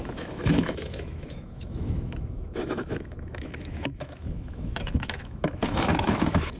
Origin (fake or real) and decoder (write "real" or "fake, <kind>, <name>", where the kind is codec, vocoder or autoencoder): fake, autoencoder, DAC-VAE